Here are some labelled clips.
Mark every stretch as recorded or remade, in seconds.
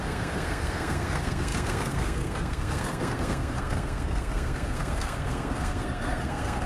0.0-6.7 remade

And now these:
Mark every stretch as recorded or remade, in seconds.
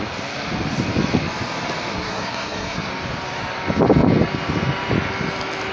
0.0-1.9 recorded; 1.9-2.9 remade; 2.9-5.7 recorded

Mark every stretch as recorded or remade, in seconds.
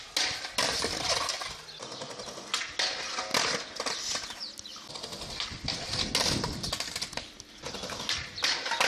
0.0-8.9 recorded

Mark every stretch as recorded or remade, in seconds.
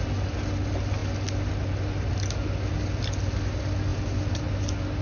0.0-5.0 recorded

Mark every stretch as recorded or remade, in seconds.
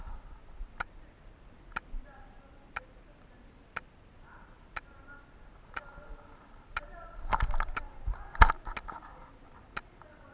0.0-10.3 recorded